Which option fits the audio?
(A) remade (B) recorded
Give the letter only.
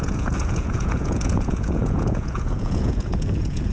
A